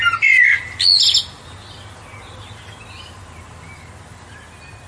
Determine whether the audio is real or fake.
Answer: real